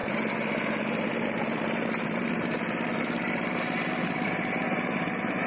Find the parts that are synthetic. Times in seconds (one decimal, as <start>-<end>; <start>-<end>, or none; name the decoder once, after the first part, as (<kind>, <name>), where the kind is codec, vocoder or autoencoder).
none